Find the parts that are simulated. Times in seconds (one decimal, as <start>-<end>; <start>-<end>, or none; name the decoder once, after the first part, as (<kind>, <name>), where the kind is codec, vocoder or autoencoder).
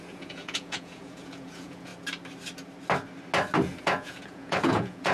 0.0-1.9 (vocoder, Vocos); 3.8-5.1